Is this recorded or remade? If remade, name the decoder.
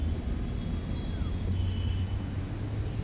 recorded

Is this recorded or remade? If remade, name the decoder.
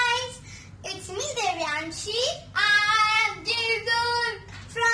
recorded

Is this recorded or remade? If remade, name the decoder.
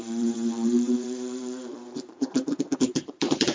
remade, vocoder, BigVGAN v2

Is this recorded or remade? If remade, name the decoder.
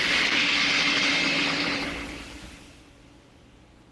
recorded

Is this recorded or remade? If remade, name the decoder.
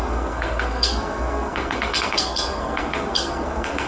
remade, codec, SNAC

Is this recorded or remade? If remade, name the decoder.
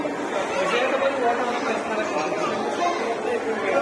recorded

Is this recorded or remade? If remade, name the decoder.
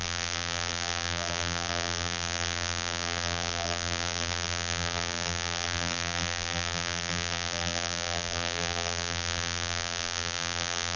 remade, vocoder, BigVGAN v2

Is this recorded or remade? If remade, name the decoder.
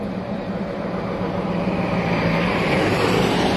remade, vocoder, BigVGAN v2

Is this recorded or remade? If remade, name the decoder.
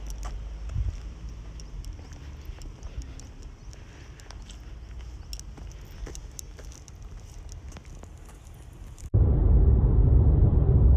recorded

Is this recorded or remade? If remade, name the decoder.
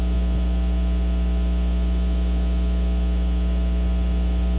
recorded